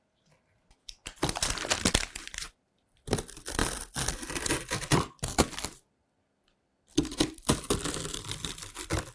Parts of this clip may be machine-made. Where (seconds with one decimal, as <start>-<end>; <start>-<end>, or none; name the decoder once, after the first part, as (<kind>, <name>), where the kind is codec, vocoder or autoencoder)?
0.0-3.6 (vocoder, BigVGAN v2); 4.1-9.1